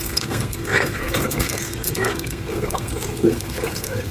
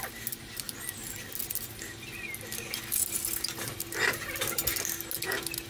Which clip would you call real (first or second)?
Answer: second